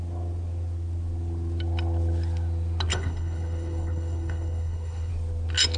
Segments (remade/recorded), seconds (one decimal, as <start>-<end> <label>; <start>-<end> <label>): 0.0-2.9 recorded; 2.9-5.1 remade; 5.1-5.8 recorded